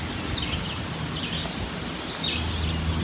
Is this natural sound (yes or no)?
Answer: yes